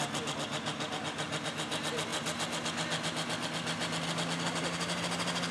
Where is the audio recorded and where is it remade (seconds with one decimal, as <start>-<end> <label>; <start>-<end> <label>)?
0.0-5.5 recorded